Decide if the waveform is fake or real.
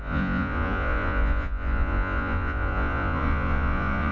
fake